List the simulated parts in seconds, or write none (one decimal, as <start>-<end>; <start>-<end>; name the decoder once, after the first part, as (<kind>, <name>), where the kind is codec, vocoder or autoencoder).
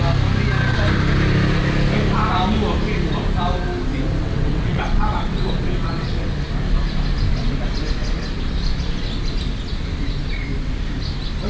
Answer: 4.2-6.3 (vocoder, WaveNeXt)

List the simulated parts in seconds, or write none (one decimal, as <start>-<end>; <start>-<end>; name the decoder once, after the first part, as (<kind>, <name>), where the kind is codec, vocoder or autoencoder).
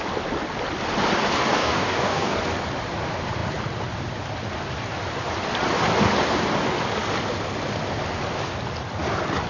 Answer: 1.6-2.4 (codec, DAC)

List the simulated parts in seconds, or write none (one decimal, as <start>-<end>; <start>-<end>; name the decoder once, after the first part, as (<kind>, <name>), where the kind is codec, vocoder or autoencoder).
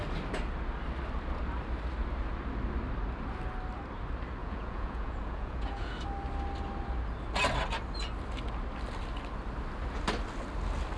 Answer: 4.4-5.9 (vocoder, Vocos)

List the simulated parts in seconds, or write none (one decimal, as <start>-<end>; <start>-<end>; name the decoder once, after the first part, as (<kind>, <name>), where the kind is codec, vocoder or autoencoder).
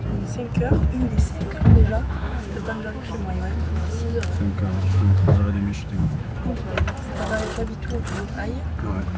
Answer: 1.7-6.3 (autoencoder, DAC-VAE)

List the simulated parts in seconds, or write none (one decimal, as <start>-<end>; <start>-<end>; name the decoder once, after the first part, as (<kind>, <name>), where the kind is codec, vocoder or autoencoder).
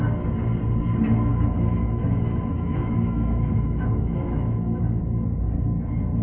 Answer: 1.3-5.0 (autoencoder, DAC-VAE)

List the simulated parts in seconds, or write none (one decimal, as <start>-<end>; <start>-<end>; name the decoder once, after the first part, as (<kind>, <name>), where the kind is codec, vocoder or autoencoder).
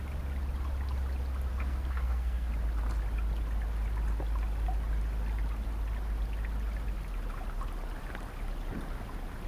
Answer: 1.5-2.5 (codec, SNAC)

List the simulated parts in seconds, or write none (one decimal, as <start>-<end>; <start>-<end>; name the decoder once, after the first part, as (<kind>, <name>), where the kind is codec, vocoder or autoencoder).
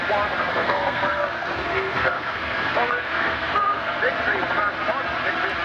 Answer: 0.5-3.9 (codec, SNAC)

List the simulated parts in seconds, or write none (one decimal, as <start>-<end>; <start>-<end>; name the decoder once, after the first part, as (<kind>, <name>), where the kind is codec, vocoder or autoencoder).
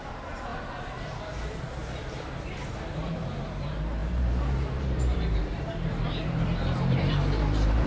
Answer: 0.0-0.5 (vocoder, BigVGAN v2); 1.2-1.8; 2.9-7.9